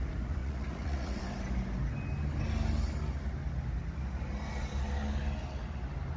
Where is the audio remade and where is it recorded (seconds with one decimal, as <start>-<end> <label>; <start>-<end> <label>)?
0.0-0.4 recorded; 0.4-1.2 remade; 1.2-6.2 recorded